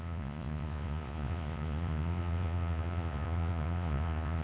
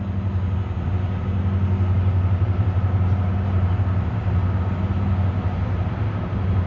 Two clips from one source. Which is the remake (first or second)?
first